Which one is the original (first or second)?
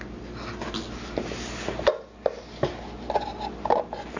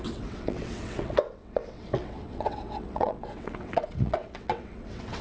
first